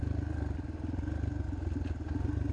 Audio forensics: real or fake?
real